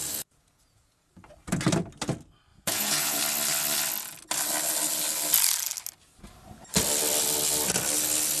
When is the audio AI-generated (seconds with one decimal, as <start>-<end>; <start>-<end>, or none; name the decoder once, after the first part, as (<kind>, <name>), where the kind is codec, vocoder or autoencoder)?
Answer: 0.0-1.1 (vocoder, Vocos); 2.5-3.2